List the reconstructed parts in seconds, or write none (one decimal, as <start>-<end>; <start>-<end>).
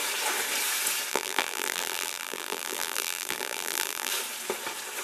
1.1-4.1